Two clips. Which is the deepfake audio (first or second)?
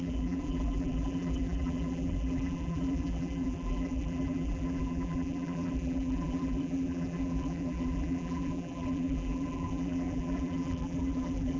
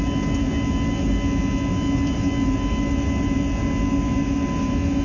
first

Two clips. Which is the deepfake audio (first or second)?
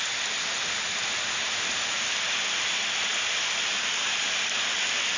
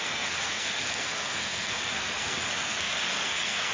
second